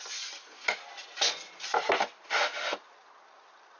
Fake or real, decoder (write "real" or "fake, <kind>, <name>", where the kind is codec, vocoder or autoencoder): real